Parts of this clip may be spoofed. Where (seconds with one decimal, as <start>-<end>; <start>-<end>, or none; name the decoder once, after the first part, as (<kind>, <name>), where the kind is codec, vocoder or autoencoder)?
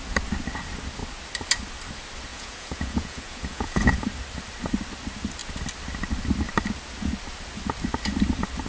2.3-4.0 (vocoder, Vocos)